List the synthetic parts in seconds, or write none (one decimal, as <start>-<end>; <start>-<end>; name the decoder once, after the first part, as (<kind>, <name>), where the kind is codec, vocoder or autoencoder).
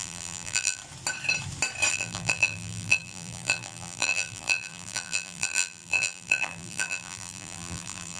0.0-0.8 (vocoder, BigVGAN v2); 1.9-8.2